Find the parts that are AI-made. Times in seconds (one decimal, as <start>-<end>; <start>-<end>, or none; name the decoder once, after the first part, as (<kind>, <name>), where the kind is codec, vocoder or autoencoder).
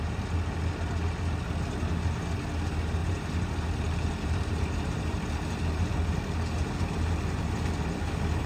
3.0-8.1 (vocoder, BigVGAN v2)